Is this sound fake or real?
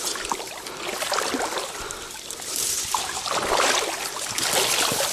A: real